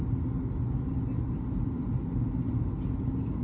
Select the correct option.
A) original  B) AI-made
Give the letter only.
A